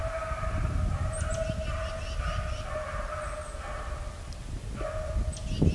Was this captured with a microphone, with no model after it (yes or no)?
yes